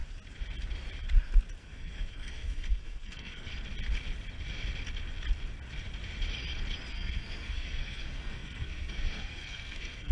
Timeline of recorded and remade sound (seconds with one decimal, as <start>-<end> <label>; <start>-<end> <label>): 0.0-1.6 recorded; 1.6-3.5 remade; 3.5-6.9 recorded; 6.9-10.1 remade